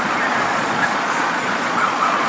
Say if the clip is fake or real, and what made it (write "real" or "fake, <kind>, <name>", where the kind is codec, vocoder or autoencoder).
fake, vocoder, Vocos